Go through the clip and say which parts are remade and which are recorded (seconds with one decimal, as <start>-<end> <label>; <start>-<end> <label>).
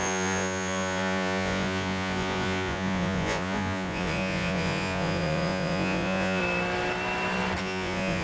0.0-6.4 remade; 6.4-7.6 recorded; 7.6-8.2 remade